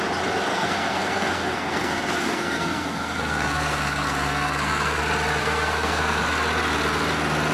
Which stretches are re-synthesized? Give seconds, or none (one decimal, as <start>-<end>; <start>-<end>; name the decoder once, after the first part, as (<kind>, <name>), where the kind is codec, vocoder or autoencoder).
0.5-5.0 (codec, SNAC); 5.4-6.2